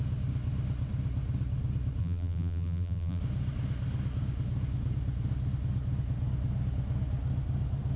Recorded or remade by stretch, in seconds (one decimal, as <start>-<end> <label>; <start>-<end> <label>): 0.0-2.0 recorded; 2.0-3.2 remade; 3.2-8.0 recorded